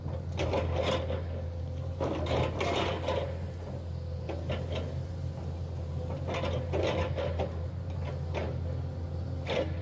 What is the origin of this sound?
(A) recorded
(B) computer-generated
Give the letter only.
A